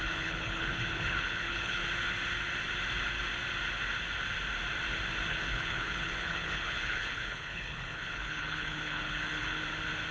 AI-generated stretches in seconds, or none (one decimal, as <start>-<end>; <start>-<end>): 0.0-1.8; 5.3-9.6